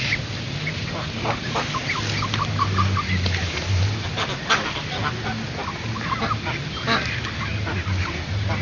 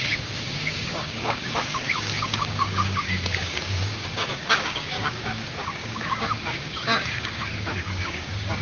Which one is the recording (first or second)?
first